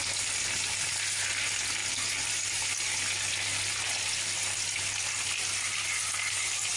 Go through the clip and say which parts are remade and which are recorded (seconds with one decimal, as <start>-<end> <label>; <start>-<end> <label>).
0.0-6.8 recorded